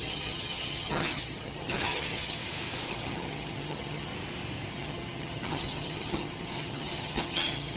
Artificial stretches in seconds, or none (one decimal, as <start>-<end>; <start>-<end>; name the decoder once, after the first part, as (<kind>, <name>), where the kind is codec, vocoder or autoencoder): 0.0-2.4 (vocoder, HiFi-GAN); 2.9-4.1; 4.7-7.8